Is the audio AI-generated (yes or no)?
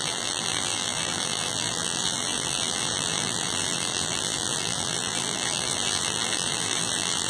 yes